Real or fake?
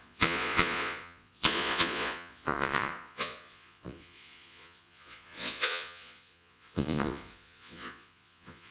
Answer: fake